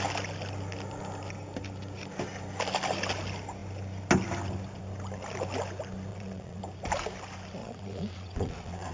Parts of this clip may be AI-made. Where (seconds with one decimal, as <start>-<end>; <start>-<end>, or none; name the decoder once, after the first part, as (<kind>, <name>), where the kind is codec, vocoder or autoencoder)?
6.1-6.6 (vocoder, WaveNeXt); 7.6-8.9